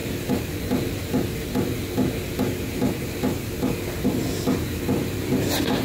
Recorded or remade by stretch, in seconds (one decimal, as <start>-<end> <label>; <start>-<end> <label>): 0.0-5.8 recorded